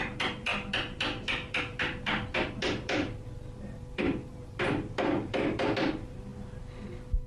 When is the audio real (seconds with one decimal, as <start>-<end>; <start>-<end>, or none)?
6.3-7.3